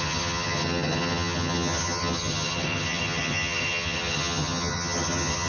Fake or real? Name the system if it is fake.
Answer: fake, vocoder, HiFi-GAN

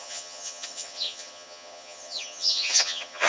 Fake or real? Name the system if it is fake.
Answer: fake, vocoder, HiFi-GAN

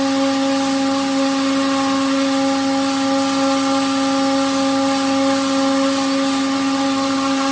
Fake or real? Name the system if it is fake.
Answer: real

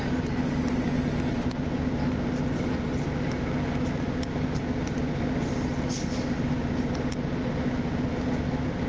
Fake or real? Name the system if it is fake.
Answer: real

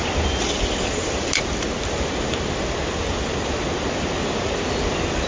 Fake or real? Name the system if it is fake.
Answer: real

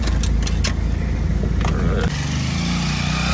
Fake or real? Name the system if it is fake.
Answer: real